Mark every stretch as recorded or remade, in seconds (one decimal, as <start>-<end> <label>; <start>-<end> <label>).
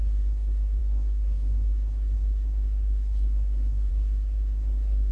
0.0-5.1 remade